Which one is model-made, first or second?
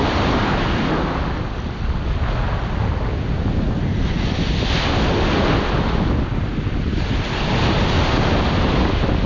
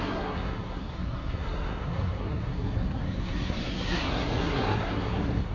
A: second